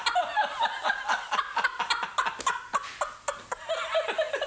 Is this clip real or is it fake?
real